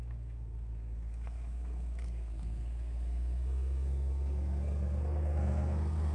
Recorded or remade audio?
remade